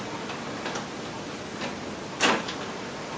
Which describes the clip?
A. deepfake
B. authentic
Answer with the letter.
B